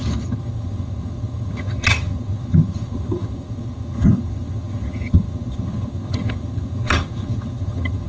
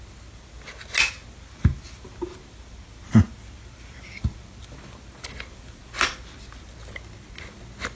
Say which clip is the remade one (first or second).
first